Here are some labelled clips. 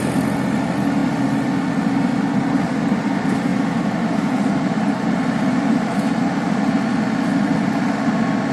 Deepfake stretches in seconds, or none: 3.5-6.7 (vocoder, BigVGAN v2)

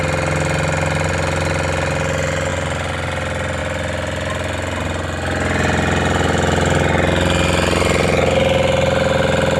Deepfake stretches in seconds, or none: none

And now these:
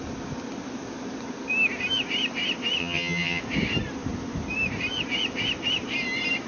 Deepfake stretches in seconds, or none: 2.8-3.4 (vocoder, HiFi-GAN)

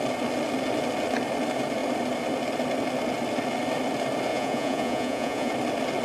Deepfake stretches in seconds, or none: 4.3-5.5 (vocoder, Vocos)